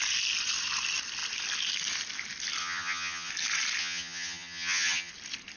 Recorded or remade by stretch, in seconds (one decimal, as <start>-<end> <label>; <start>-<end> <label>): 0.0-2.6 recorded; 2.6-3.3 remade; 3.3-3.8 recorded; 3.8-5.1 remade; 5.1-5.6 recorded

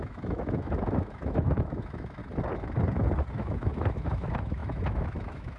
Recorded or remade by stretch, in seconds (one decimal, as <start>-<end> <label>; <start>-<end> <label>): 0.0-2.2 remade; 2.2-3.3 recorded; 3.3-5.6 remade

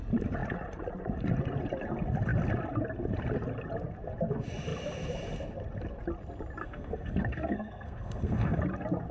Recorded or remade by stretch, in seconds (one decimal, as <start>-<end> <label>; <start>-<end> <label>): 0.0-6.6 recorded; 6.6-8.6 remade; 8.6-9.1 recorded

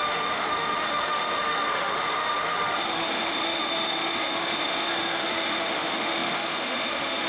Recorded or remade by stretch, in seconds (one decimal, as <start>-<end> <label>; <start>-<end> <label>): 0.0-7.3 remade

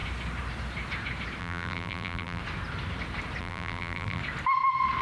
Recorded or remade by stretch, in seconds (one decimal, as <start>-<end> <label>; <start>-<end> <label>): 0.0-1.4 recorded; 1.4-2.4 remade; 2.4-3.4 recorded; 3.4-4.2 remade; 4.2-5.0 recorded

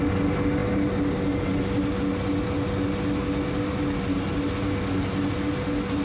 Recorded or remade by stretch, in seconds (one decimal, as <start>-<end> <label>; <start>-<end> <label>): 0.0-6.0 recorded